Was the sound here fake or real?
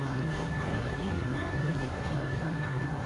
fake